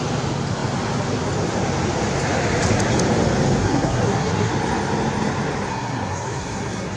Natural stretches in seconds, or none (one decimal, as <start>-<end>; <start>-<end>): 0.0-3.6; 4.5-5.7